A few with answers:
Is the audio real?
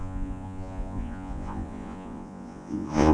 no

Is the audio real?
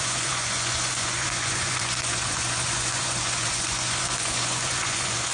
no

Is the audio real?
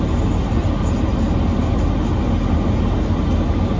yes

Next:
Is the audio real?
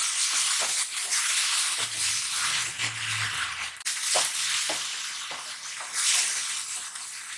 yes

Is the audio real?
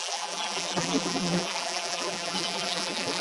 no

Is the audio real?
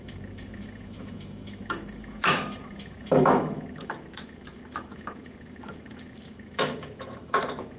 no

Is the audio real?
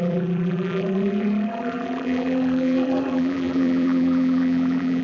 no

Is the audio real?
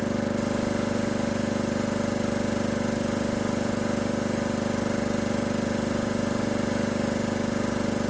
yes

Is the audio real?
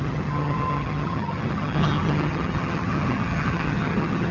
no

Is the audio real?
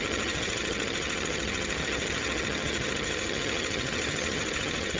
no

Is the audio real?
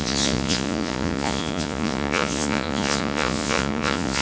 no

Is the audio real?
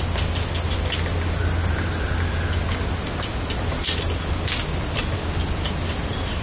yes